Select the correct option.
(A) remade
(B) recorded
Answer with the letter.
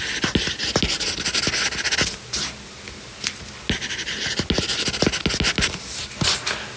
B